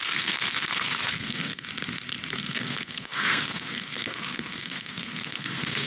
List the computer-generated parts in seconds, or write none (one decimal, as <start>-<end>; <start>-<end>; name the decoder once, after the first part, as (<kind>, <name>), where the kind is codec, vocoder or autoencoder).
0.0-1.7 (codec, SNAC); 2.3-5.9